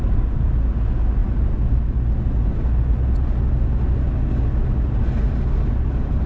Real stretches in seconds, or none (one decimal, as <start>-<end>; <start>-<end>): 0.0-6.3